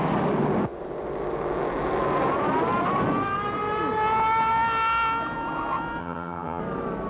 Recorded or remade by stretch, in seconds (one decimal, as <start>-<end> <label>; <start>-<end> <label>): 0.0-6.0 recorded; 6.0-6.6 remade; 6.6-7.1 recorded